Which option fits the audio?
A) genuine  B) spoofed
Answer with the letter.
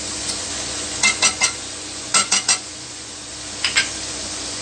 B